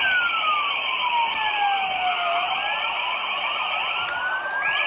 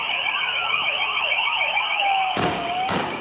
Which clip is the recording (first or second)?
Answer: first